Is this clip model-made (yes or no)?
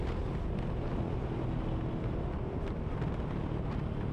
no